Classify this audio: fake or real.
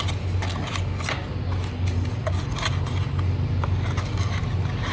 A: real